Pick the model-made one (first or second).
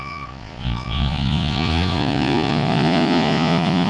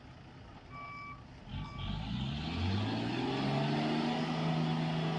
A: first